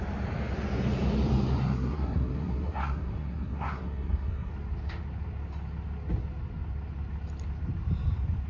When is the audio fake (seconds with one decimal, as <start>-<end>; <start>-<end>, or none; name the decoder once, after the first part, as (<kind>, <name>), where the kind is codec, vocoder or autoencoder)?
1.6-4.5 (codec, SNAC)